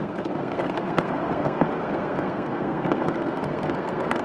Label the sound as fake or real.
fake